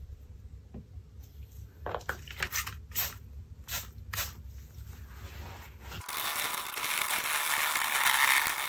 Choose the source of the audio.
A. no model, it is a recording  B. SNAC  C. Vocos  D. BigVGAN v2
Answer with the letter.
A